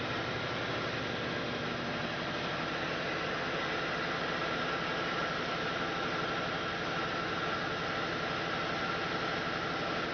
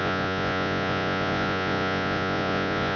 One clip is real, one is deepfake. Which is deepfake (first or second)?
second